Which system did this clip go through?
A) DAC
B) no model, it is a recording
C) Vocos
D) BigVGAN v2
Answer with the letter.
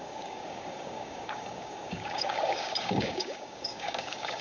A